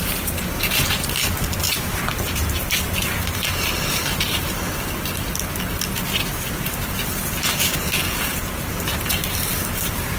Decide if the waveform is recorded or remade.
recorded